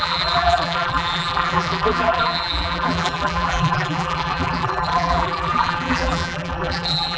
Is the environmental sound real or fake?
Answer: fake